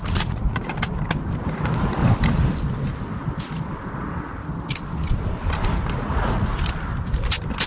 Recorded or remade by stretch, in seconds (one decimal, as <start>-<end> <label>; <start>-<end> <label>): 0.0-0.7 remade; 0.7-1.5 recorded; 1.5-2.0 remade; 2.0-6.0 recorded; 6.0-6.5 remade; 6.5-7.7 recorded